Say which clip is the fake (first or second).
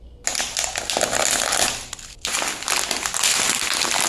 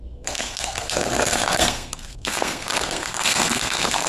second